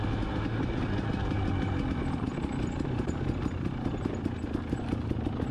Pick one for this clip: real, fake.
real